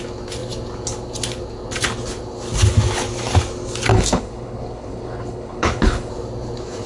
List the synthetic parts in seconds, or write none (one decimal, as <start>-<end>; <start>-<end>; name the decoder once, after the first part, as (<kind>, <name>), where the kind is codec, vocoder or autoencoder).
3.9-6.1 (codec, HILCodec)